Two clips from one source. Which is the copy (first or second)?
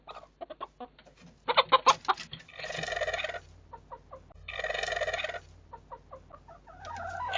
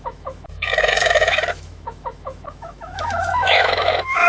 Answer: second